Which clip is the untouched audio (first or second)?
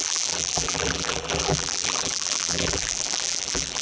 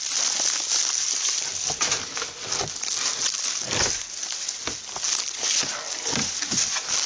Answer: second